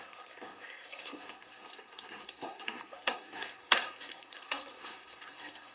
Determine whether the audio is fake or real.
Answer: fake